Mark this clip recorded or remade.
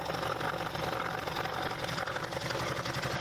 recorded